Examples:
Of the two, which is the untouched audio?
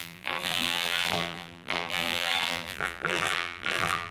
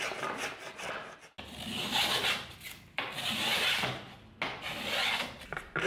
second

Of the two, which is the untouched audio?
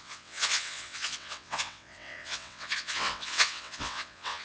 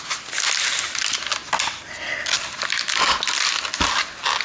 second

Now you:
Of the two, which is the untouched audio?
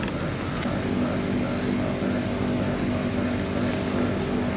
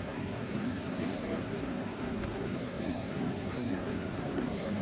first